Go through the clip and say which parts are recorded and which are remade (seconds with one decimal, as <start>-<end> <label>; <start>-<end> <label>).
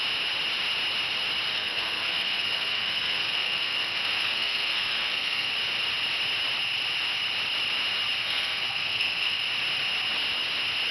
0.0-1.5 recorded; 1.5-5.5 remade; 5.5-8.2 recorded; 8.2-9.4 remade; 9.4-10.9 recorded